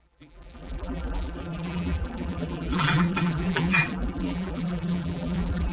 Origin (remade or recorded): remade